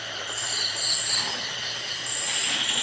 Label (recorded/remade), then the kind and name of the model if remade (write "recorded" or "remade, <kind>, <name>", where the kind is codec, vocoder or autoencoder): recorded